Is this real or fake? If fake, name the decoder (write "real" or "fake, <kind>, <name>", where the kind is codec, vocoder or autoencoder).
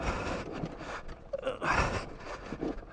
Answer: real